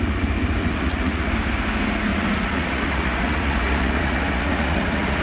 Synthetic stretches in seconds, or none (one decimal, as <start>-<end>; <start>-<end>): 0.6-1.3; 2.1-5.2